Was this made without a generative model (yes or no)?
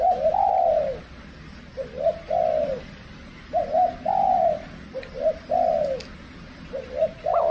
yes